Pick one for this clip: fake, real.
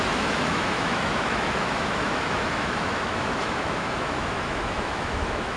fake